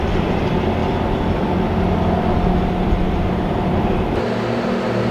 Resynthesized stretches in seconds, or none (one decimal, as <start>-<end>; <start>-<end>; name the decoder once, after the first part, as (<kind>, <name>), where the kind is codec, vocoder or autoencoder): none